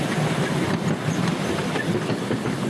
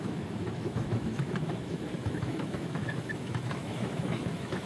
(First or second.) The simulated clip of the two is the second